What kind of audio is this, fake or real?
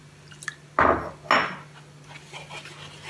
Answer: real